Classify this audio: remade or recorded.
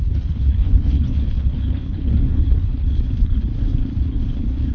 remade